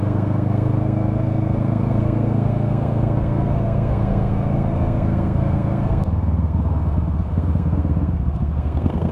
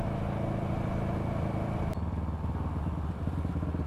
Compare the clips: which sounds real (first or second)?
second